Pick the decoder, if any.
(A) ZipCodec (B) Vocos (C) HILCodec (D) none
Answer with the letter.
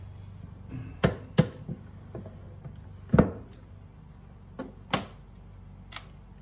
D